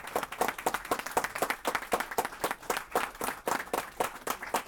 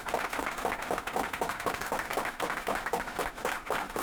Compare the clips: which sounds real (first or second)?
first